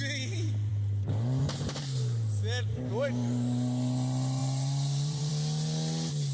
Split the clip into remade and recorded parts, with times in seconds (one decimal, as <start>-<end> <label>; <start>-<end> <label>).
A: 0.0-4.4 recorded; 4.4-5.3 remade; 5.3-6.3 recorded